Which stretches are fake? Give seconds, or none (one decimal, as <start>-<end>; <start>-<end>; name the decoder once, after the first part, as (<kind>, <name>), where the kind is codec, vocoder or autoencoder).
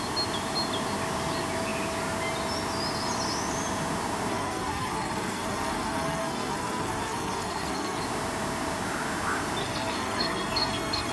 4.3-8.0 (codec, SNAC); 9.6-11.1